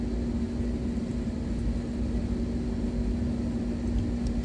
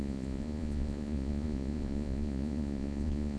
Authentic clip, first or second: first